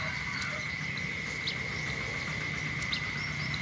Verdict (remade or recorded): recorded